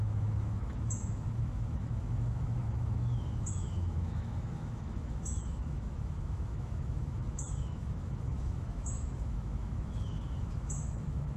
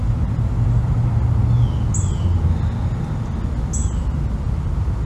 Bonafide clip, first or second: second